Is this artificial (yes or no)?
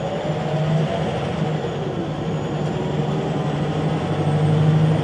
no